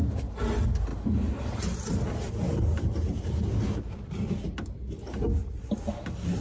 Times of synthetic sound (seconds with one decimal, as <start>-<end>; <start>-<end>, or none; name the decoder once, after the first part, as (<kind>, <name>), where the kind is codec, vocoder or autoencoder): none